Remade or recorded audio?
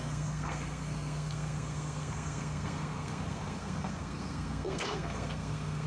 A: remade